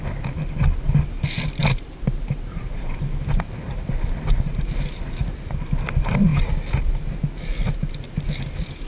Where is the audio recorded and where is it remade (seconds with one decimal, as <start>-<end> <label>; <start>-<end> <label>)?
0.0-1.6 recorded; 1.6-3.0 remade; 3.0-3.6 recorded; 3.6-5.4 remade; 5.4-8.9 recorded